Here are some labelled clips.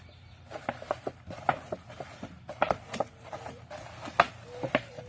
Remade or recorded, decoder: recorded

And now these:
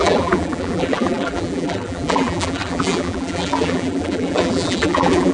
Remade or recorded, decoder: remade, vocoder, BigVGAN v2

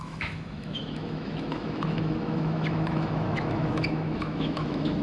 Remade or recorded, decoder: remade, autoencoder, DAC-VAE